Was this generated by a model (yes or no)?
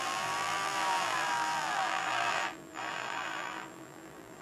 yes